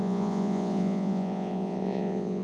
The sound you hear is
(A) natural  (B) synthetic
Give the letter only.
B